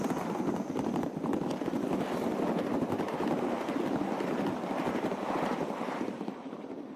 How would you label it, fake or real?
real